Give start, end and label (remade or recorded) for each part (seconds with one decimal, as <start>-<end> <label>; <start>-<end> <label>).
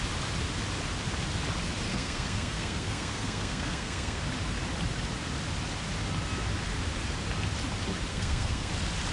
0.0-1.9 recorded; 1.9-4.2 remade; 4.2-8.1 recorded; 8.1-8.7 remade; 8.7-9.1 recorded